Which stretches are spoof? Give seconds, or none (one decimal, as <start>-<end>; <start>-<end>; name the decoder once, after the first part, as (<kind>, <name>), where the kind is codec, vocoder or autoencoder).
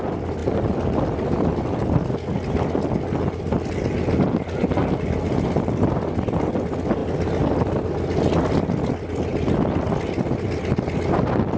0.4-1.6 (vocoder, BigVGAN v2); 4.8-5.5